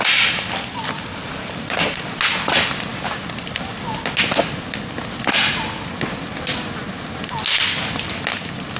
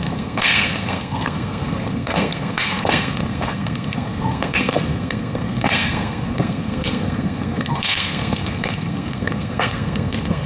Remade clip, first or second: second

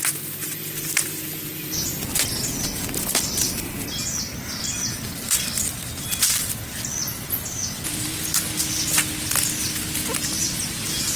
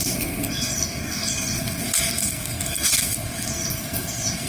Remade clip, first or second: second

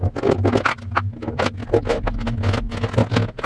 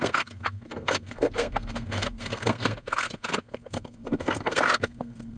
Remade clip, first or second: second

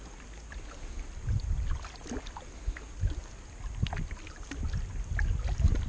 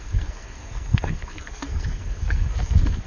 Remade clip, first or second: second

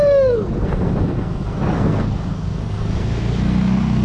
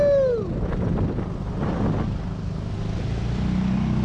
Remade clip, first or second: first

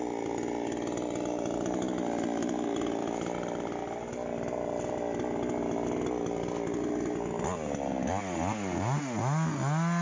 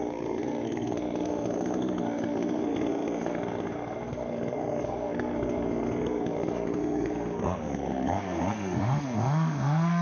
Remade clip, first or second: second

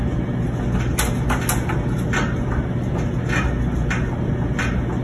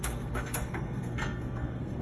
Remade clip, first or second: second